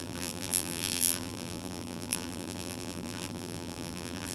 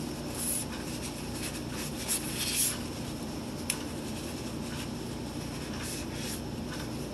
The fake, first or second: first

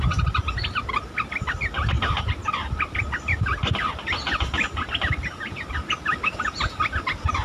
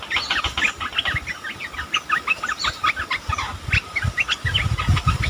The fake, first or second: first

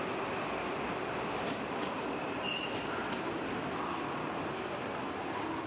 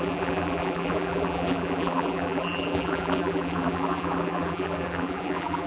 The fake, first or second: second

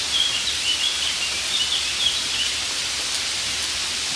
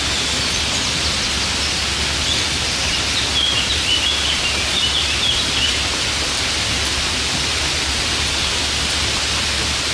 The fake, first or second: first